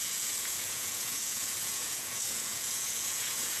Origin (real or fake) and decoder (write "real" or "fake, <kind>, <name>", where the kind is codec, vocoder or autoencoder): fake, vocoder, Vocos